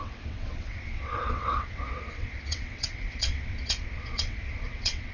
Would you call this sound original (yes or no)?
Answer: no